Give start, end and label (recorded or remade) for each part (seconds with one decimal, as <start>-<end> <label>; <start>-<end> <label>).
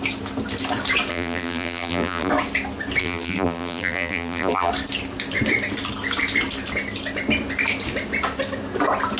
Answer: 0.0-1.1 recorded; 1.1-2.3 remade; 2.3-3.0 recorded; 3.0-4.7 remade; 4.7-9.2 recorded